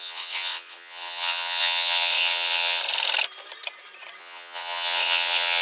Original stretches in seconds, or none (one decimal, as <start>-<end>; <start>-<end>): 2.8-4.2